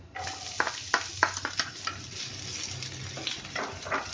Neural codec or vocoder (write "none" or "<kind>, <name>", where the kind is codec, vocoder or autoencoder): none